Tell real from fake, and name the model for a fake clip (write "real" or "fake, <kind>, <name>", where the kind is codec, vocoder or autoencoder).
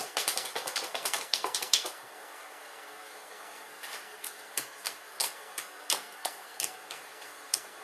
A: fake, codec, SNAC